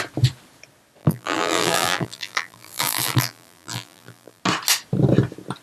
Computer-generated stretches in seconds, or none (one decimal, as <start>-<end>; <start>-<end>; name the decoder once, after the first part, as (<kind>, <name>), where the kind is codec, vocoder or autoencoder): 1.0-4.4 (vocoder, BigVGAN v2)